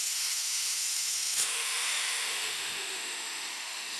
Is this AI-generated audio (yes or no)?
yes